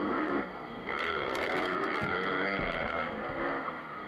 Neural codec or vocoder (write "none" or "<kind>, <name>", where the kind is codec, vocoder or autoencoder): codec, SNAC